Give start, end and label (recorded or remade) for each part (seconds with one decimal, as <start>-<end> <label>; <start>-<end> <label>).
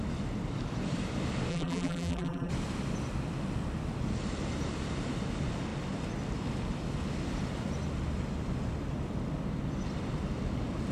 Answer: 0.0-1.5 recorded; 1.5-2.5 remade; 2.5-10.9 recorded